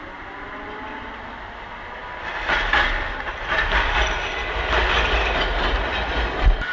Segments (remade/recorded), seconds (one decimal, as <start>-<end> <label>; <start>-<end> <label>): 0.0-6.7 recorded